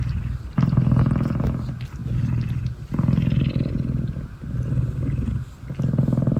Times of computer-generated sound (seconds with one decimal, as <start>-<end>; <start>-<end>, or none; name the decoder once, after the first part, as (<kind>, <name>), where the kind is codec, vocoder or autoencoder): none